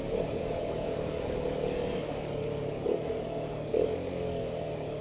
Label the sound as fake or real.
fake